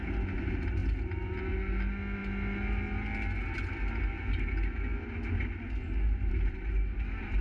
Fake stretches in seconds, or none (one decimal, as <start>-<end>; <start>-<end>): none